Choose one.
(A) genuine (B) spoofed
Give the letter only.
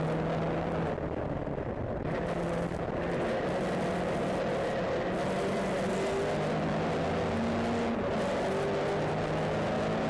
A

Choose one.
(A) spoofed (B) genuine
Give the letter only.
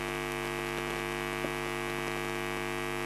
B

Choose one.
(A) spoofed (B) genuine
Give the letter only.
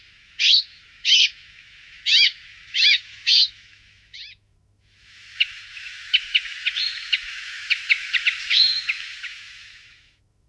A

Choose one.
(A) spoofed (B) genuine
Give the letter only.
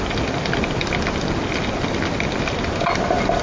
B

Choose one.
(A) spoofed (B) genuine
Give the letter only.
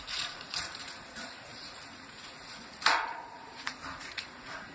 A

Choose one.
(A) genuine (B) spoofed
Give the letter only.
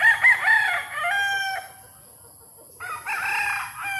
A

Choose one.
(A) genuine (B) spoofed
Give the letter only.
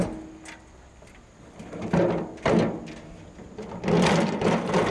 A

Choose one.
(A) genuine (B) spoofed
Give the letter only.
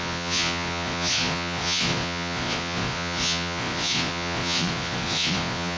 B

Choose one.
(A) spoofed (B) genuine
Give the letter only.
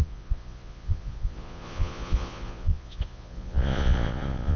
A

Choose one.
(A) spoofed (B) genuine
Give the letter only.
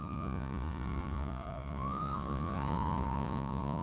A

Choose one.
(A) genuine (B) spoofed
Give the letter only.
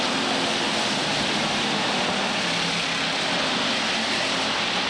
A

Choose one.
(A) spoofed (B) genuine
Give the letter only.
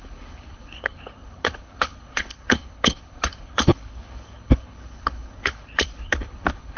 A